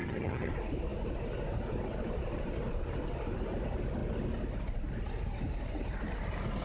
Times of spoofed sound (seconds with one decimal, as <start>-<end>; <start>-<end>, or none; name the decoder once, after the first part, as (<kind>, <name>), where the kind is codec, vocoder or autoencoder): 0.0-0.5 (vocoder, HiFi-GAN)